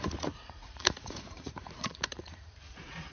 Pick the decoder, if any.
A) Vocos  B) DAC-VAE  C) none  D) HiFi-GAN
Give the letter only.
A